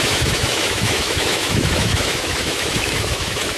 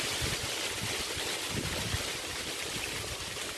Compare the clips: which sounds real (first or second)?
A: second